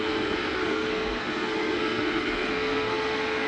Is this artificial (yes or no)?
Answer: yes